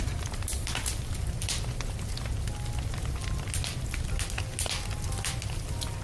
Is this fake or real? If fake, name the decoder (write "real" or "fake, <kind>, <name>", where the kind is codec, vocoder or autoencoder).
real